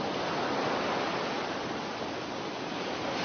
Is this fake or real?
real